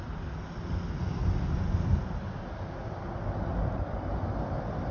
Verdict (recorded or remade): recorded